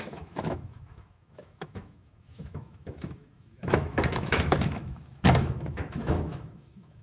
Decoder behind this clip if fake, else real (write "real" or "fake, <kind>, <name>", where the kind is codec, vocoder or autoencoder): fake, autoencoder, DAC-VAE